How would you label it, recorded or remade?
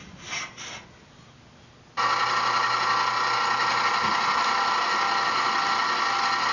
recorded